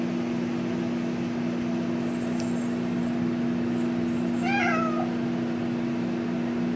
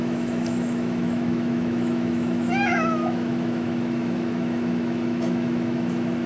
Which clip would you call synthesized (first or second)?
second